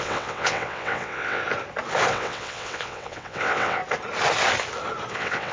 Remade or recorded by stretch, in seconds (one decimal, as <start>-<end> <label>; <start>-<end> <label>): 0.0-1.4 remade; 1.4-2.1 recorded; 2.1-3.8 remade; 3.8-5.1 recorded; 5.1-5.5 remade

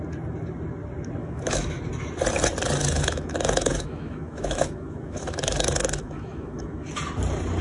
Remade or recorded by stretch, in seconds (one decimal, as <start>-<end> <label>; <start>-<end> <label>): 0.0-1.2 recorded; 1.2-1.8 remade; 1.8-2.8 recorded; 2.8-6.9 remade; 6.9-7.6 recorded

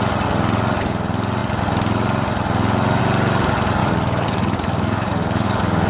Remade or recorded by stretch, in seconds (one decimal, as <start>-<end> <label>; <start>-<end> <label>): 0.0-3.8 recorded; 3.8-5.9 remade

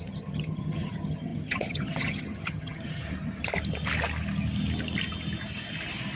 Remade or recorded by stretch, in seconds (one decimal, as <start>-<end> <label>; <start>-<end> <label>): 0.0-3.0 remade; 3.0-6.2 recorded

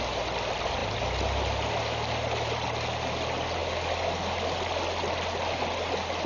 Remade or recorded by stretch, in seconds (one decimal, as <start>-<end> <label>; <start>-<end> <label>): 0.0-6.3 recorded

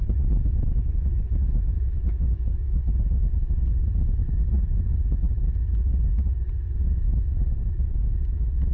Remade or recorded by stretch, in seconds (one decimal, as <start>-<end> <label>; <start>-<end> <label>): 0.0-1.2 recorded; 1.2-2.8 remade; 2.8-7.1 recorded; 7.1-8.7 remade